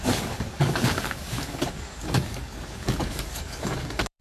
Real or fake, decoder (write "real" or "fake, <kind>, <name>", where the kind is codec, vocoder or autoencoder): fake, codec, DAC